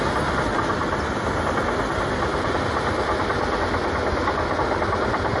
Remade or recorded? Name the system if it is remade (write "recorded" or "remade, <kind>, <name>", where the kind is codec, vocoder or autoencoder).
recorded